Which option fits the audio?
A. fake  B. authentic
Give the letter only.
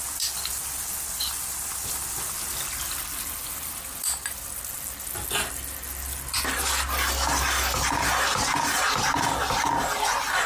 B